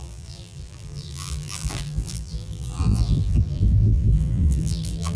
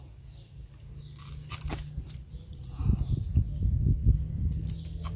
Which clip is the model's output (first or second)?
first